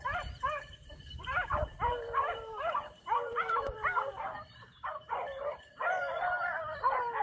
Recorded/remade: remade